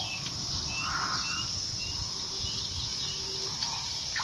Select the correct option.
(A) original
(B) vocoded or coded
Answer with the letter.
A